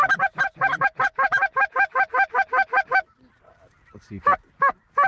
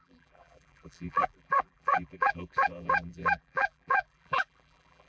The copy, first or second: second